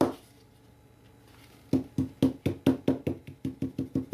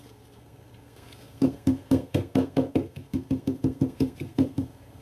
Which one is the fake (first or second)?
second